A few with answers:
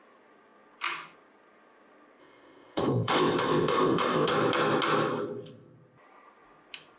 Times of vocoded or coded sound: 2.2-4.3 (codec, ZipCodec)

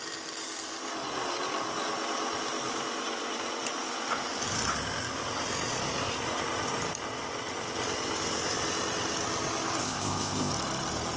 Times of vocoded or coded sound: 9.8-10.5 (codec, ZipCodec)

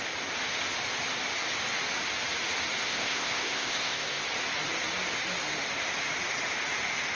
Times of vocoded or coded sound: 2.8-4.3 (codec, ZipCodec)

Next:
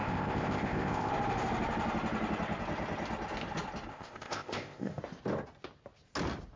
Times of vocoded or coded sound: 0.0-1.1 (codec, ZipCodec); 3.9-5.0

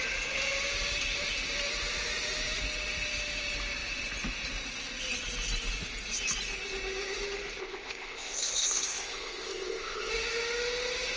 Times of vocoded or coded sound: 7.6-10.1 (codec, ZipCodec)

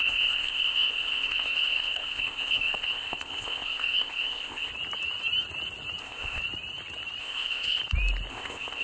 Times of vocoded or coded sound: 0.0-4.7 (codec, ZipCodec); 6.0-6.4; 7.2-7.8; 8.3-8.8

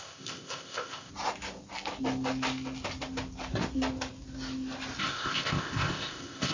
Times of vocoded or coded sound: 0.0-1.1 (codec, ZipCodec); 5.0-6.5

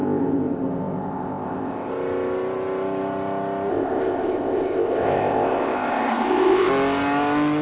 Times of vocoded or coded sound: 0.0-1.9 (codec, ZipCodec); 3.7-6.7